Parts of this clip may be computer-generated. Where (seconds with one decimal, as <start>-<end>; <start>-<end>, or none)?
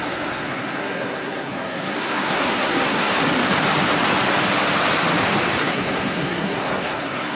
0.0-3.1; 5.6-7.4